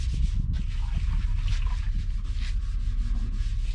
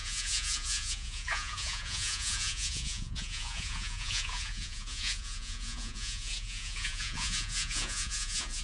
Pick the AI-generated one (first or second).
second